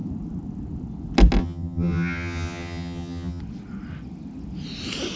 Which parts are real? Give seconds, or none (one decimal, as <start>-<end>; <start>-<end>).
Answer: 0.0-1.4; 3.4-5.2